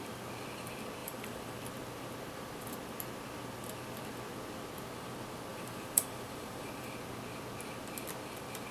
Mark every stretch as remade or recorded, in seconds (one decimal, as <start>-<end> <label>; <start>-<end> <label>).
0.0-1.0 recorded; 1.0-1.6 remade; 1.6-5.5 recorded; 5.5-6.9 remade; 6.9-8.7 recorded